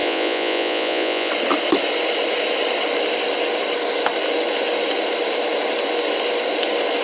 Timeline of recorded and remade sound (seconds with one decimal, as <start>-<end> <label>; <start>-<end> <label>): 0.0-1.3 remade; 1.3-7.0 recorded

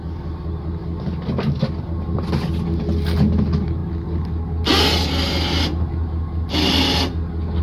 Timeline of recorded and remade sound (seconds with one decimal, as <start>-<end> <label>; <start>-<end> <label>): 0.0-7.6 recorded

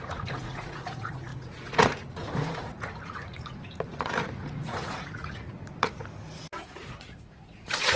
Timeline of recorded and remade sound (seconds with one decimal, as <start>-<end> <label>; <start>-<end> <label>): 0.0-8.0 remade

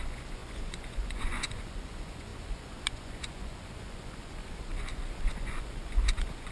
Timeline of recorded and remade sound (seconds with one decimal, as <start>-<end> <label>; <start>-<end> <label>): 0.0-6.5 remade